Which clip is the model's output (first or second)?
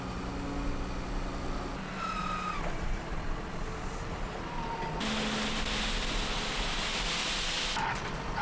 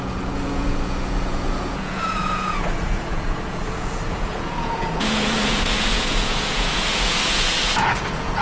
second